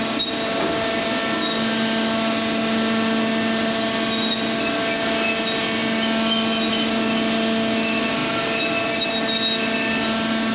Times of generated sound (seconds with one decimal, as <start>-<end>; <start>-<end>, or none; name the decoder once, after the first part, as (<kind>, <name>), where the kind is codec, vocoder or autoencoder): none